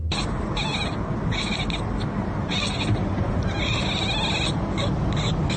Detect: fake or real real